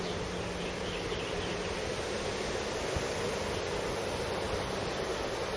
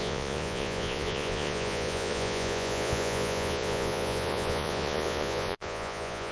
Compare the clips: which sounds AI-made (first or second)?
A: second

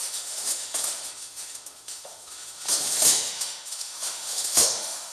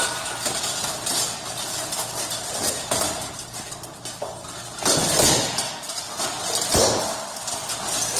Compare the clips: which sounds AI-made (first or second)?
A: first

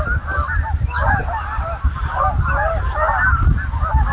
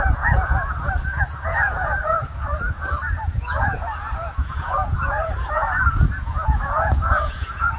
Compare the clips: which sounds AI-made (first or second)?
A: second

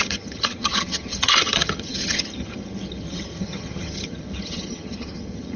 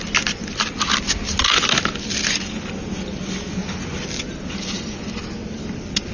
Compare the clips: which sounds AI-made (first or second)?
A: first